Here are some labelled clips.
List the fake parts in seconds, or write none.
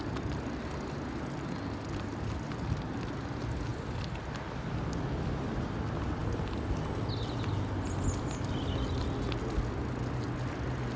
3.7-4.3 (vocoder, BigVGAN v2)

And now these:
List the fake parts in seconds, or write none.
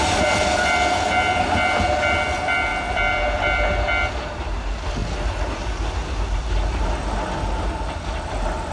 none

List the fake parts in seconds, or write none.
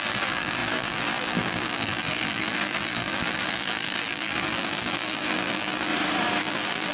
0.0-5.9 (vocoder, BigVGAN v2); 6.4-6.9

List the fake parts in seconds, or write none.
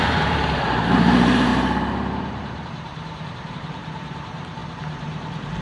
0.0-5.6 (vocoder, BigVGAN v2)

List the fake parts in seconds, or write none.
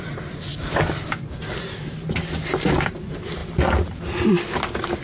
0.5-2.2 (vocoder, BigVGAN v2); 3.4-4.3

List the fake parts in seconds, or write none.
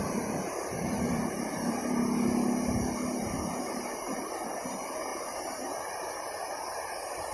0.0-1.8 (vocoder, BigVGAN v2); 3.7-7.3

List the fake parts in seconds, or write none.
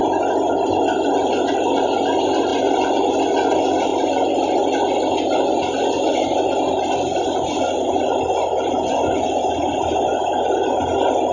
none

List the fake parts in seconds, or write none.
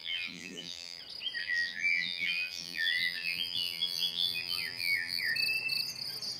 0.0-1.0 (vocoder, BigVGAN v2); 1.4-5.2